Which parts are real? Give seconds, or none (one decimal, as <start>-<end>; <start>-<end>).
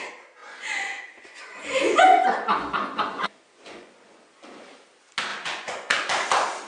0.0-0.4; 4.4-5.3; 6.1-6.7